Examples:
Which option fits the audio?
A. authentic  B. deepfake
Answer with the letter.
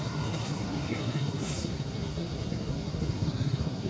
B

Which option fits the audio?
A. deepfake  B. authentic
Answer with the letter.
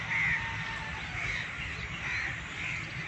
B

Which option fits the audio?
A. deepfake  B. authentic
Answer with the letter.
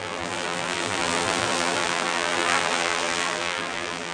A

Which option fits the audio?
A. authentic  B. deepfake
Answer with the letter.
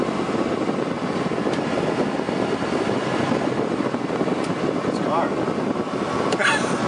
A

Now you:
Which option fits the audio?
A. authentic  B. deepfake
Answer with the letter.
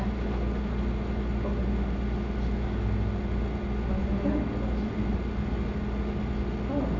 A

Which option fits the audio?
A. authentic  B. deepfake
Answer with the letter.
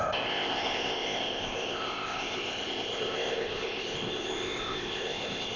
B